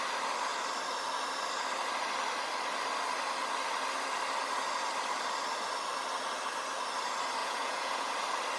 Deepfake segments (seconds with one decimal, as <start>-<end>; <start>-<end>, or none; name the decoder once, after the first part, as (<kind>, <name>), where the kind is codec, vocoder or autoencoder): 7.4-8.1 (vocoder, Vocos)